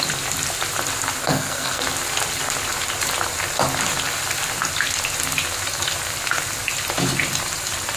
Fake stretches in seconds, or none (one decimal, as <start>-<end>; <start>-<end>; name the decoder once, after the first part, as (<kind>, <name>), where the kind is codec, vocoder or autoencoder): 1.2-1.8 (codec, SNAC)